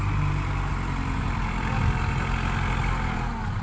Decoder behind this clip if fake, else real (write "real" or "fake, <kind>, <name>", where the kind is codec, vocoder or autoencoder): real